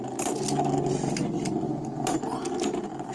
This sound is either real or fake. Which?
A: real